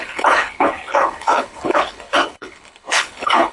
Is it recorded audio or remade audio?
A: remade